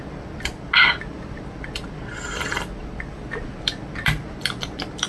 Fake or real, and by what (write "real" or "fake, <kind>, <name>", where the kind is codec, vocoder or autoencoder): real